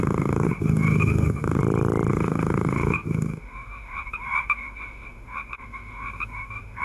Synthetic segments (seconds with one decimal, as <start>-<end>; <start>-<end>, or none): 0.0-1.6; 2.1-6.8